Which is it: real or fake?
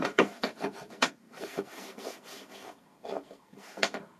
fake